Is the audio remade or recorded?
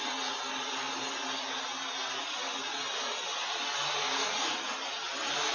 recorded